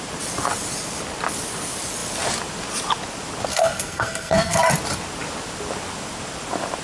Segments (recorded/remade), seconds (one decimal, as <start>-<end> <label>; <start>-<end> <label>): 0.0-3.5 recorded; 3.5-4.6 remade; 4.6-6.8 recorded